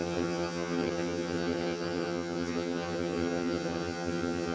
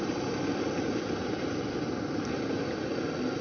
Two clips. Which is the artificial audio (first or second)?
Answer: first